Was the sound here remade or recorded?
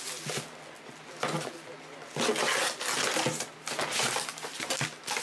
recorded